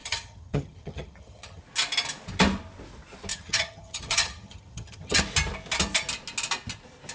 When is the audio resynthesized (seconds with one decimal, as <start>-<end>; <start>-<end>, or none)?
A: 0.0-1.6; 3.3-5.2